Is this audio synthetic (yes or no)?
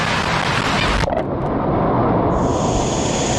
no